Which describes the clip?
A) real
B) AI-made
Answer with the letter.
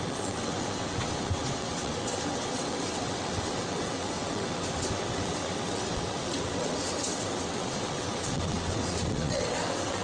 B